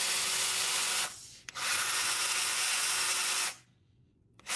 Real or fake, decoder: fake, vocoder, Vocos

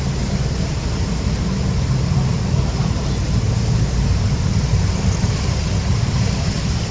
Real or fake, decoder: real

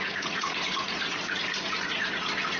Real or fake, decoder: fake, vocoder, Vocos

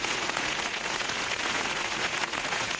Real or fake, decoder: fake, vocoder, Vocos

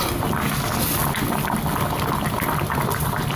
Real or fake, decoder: real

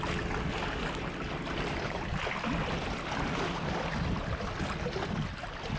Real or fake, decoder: real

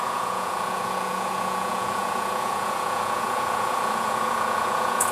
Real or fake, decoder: fake, vocoder, Vocos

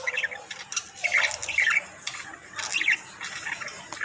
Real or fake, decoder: real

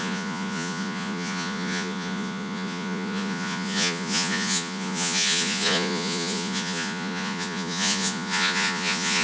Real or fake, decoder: fake, vocoder, Vocos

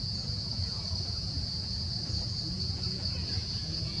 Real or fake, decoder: fake, vocoder, Vocos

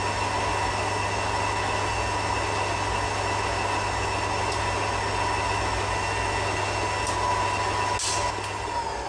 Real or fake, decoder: real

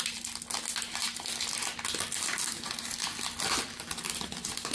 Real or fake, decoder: real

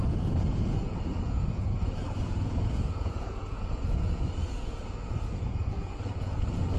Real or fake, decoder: fake, vocoder, Vocos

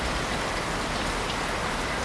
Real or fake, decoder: real